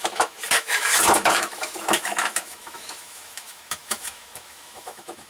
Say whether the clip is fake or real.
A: fake